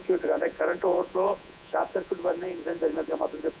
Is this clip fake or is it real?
fake